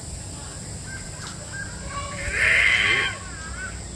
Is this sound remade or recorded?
recorded